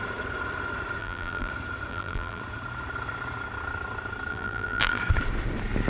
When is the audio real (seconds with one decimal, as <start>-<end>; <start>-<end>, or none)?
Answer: 0.0-1.0; 1.5-1.9; 2.4-4.3; 5.0-5.9